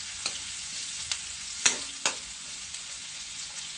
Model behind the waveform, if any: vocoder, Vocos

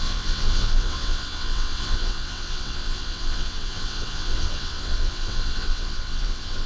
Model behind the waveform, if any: vocoder, WaveNeXt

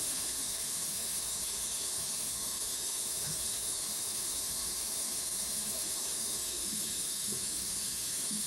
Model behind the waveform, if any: autoencoder, DAC-VAE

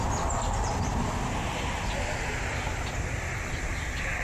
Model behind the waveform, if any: none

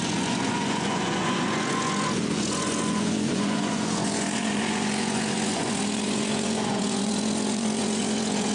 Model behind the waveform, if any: vocoder, Vocos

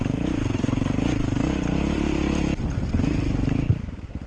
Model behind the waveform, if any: vocoder, BigVGAN v2